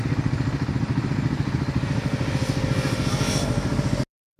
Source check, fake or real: real